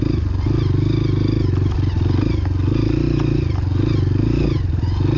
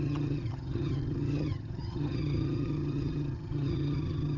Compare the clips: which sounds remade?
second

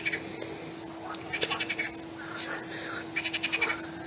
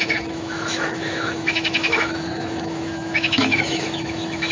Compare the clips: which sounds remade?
second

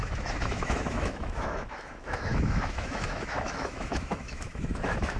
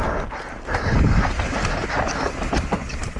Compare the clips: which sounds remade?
first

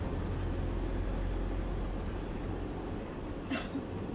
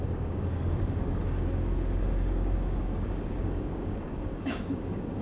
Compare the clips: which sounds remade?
second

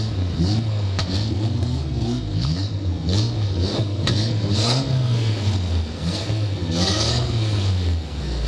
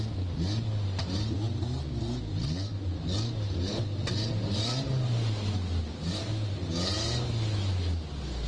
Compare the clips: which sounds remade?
first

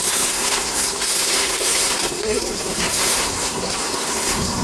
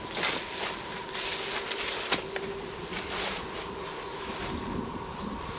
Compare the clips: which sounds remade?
first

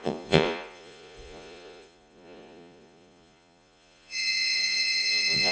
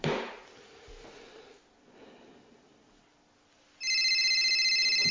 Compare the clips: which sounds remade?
first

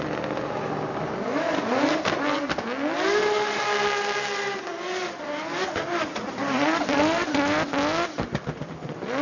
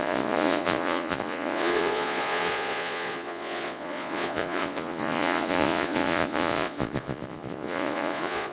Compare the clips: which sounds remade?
second